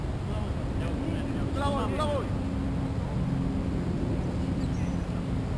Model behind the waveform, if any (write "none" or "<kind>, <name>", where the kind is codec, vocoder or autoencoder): none